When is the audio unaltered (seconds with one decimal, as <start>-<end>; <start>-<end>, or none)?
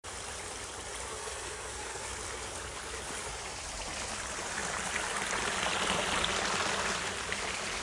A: 0.0-1.1; 2.1-7.8